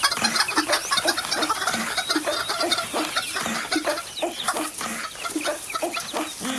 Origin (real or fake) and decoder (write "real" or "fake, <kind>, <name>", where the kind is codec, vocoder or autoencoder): real